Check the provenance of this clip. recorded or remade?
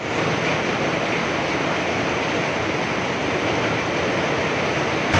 recorded